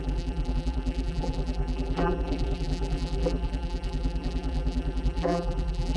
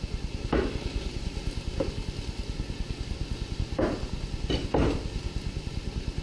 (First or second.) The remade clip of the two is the first